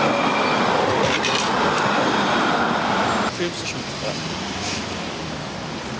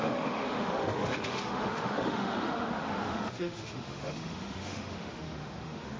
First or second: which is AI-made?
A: second